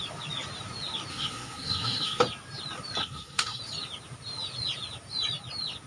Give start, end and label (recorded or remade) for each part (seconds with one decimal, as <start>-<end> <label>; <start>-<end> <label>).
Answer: 0.0-1.1 recorded; 1.1-2.2 remade; 2.2-3.0 recorded; 3.0-3.6 remade; 3.6-5.9 recorded